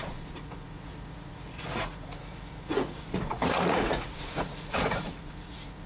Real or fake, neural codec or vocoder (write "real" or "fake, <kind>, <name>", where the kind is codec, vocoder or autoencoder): fake, vocoder, Vocos